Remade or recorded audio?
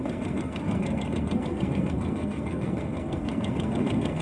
remade